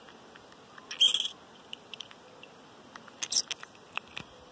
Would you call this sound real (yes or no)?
yes